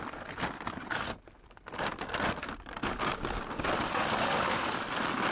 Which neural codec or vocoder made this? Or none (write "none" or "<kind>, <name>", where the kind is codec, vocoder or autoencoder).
none